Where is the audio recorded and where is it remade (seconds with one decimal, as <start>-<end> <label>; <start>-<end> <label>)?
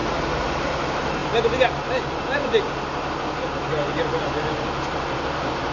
0.0-5.7 recorded